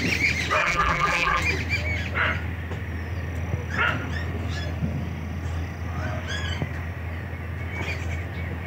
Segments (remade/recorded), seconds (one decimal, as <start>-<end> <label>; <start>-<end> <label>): 0.0-0.6 recorded; 0.6-1.4 remade; 1.4-8.7 recorded